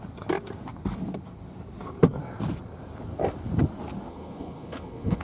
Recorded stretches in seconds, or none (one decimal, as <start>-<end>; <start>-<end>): 0.0-4.1

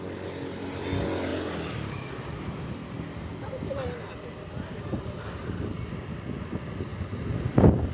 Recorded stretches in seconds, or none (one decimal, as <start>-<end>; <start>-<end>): 0.0-7.9

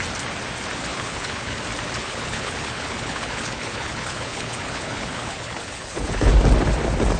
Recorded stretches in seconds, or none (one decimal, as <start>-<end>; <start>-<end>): 0.0-0.9; 1.6-2.0; 6.3-7.2

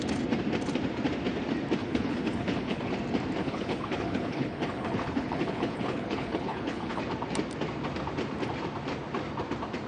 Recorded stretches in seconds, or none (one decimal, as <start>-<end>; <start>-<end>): 0.0-1.8; 2.9-3.4; 7.0-9.9

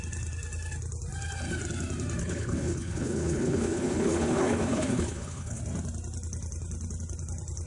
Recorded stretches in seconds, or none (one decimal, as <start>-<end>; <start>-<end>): 0.0-2.2; 5.6-7.7

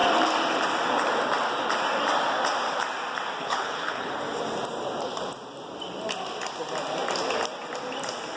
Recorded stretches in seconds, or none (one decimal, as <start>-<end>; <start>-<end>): 0.0-3.4; 4.1-8.4

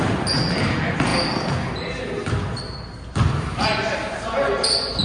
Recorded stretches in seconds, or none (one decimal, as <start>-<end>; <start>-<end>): 0.0-5.0

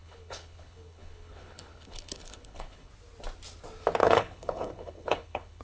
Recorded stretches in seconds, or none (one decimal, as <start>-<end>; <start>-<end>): 2.9-4.0